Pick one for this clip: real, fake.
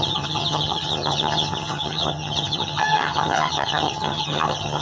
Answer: fake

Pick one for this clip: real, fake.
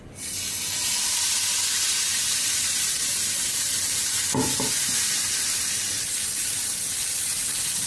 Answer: real